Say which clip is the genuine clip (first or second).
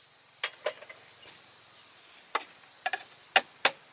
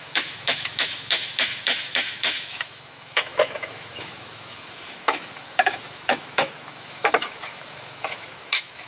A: first